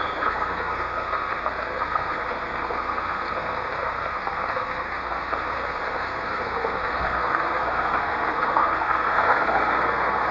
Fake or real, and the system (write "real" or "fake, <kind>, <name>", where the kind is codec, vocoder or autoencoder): fake, codec, SNAC